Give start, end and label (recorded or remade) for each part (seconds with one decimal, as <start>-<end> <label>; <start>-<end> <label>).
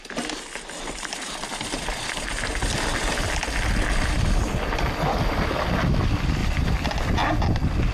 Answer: 0.0-6.4 recorded; 6.4-7.1 remade; 7.1-7.9 recorded